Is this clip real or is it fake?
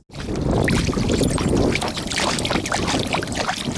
real